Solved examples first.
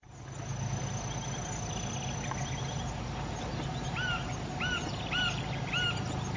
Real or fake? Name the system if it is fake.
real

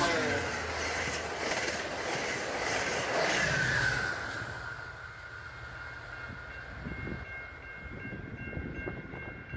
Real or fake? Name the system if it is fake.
real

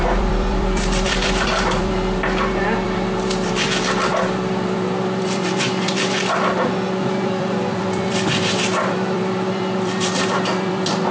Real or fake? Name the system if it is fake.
fake, vocoder, BigVGAN v2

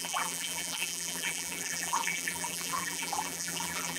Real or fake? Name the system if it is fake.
fake, vocoder, BigVGAN v2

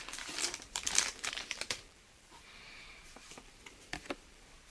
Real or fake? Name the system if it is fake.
fake, vocoder, BigVGAN v2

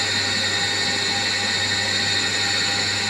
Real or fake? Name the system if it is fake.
real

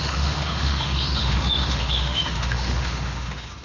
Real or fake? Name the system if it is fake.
fake, autoencoder, DAC-VAE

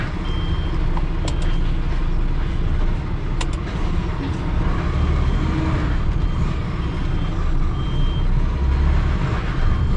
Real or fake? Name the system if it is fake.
real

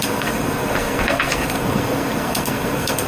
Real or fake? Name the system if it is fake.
fake, codec, SNAC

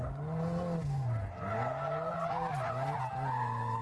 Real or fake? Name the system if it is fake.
real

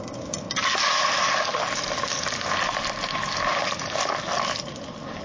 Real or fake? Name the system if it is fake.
real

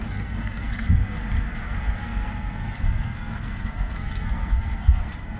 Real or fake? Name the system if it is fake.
fake, codec, SNAC